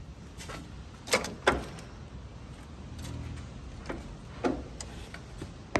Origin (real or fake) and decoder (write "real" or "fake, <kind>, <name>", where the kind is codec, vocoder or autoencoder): real